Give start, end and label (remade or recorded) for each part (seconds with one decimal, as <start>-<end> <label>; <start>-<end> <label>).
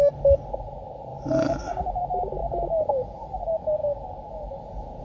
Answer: 0.0-5.0 recorded